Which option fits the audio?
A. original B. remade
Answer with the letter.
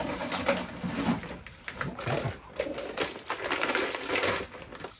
A